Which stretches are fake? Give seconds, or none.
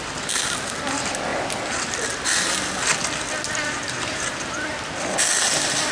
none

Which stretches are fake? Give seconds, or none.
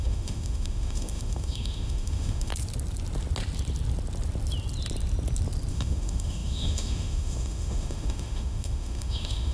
0.0-2.5 (autoencoder, DAC-VAE); 5.7-9.5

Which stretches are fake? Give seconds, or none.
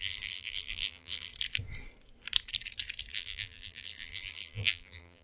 0.0-1.3 (vocoder, BigVGAN v2); 3.1-5.2